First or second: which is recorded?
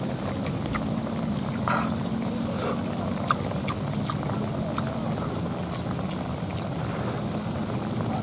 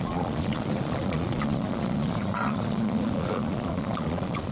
first